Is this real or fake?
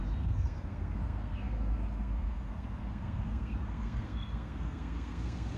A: fake